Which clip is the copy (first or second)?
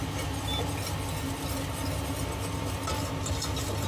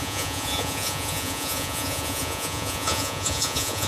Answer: second